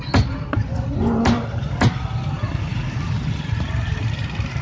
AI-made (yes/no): no